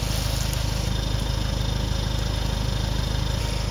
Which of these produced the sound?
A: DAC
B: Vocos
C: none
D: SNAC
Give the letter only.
C